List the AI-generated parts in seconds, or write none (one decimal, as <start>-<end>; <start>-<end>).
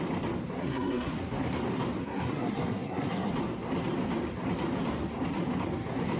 0.6-1.2; 2.0-3.3